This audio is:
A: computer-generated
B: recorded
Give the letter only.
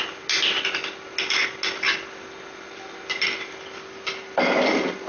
B